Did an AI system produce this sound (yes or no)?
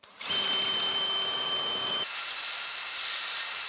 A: yes